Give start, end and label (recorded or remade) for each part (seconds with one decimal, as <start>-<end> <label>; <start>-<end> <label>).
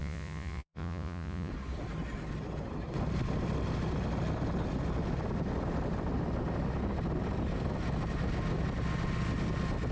0.0-1.5 remade; 1.5-9.9 recorded